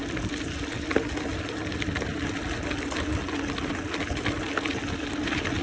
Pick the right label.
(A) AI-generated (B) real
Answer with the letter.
B